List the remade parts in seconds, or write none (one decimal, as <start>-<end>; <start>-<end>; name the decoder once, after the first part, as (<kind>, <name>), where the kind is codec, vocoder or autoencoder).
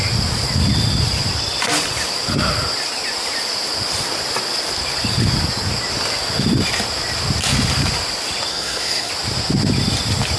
8.5-9.1 (codec, SNAC)